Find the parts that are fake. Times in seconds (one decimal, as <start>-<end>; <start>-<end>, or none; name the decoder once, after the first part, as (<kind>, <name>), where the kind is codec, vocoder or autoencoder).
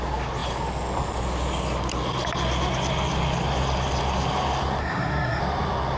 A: 4.8-5.4 (codec, SNAC)